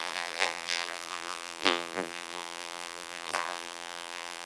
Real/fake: fake